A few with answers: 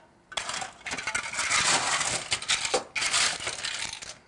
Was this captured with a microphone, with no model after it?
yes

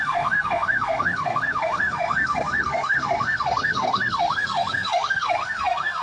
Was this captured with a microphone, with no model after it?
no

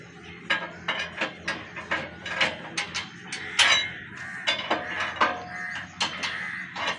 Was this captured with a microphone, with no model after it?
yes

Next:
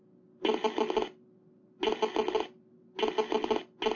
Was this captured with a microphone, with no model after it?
yes